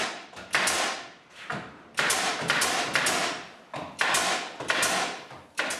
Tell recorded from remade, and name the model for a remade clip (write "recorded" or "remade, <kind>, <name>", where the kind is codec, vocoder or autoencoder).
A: recorded